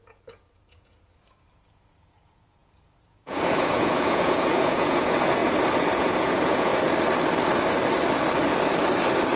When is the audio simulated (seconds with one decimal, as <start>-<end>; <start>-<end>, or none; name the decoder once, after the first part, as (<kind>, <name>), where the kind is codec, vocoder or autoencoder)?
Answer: 0.0-5.4 (vocoder, Vocos); 6.0-6.7